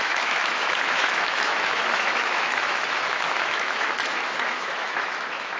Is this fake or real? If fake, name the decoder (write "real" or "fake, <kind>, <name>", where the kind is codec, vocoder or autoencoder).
fake, autoencoder, DAC-VAE